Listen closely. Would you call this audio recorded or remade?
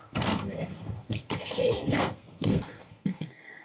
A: remade